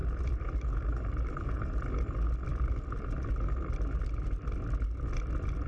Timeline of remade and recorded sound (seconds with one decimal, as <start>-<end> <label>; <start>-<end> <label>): 0.0-1.6 remade; 1.6-2.5 recorded; 2.5-3.3 remade; 3.3-5.7 recorded